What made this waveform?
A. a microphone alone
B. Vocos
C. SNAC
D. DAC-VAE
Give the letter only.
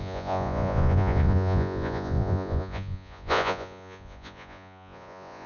B